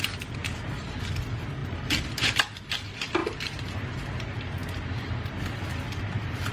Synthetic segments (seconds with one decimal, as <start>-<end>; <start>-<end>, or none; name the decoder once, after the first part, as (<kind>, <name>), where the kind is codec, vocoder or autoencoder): 0.0-0.4 (vocoder, BigVGAN v2); 1.2-3.2; 3.7-4.6; 6.0-6.5